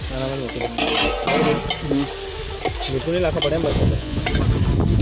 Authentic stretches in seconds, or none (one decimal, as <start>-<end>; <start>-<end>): 0.0-3.7; 4.2-5.0

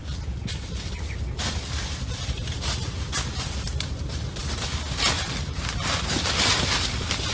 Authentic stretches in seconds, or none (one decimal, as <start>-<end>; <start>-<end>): 0.0-7.3

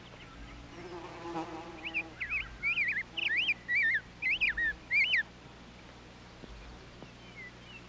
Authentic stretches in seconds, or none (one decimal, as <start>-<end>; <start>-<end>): 0.0-7.9

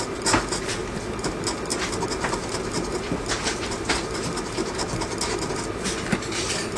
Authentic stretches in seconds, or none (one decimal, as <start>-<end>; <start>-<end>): 0.0-6.8